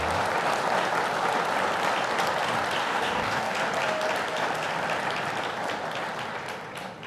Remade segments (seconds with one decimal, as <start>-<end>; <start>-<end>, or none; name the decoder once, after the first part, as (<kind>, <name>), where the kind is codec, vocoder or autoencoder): 2.8-3.5 (codec, DAC)